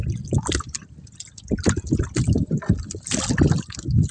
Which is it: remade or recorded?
recorded